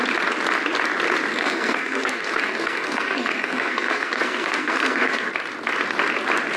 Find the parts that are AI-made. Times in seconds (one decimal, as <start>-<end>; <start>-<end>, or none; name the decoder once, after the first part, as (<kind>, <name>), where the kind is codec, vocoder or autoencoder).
1.3-5.3 (codec, SNAC)